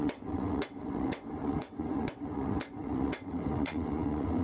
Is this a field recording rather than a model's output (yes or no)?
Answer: no